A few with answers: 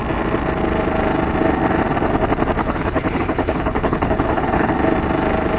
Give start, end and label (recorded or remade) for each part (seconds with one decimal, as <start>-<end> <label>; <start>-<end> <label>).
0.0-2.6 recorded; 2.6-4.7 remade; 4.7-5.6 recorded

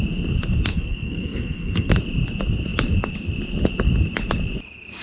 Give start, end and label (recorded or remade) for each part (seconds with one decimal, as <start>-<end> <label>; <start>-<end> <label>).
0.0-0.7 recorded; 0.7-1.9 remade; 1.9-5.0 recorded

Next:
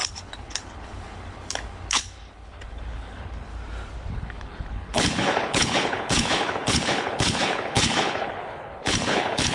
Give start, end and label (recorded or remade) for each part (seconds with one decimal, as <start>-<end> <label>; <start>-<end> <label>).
0.0-3.5 remade; 3.5-4.1 recorded; 4.1-9.5 remade